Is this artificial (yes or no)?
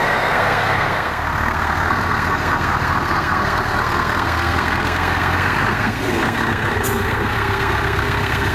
yes